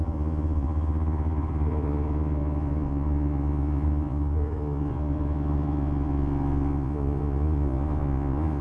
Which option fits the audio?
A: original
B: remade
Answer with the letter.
B